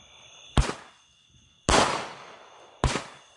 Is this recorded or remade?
recorded